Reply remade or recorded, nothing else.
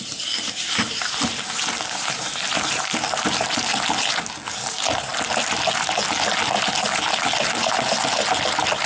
recorded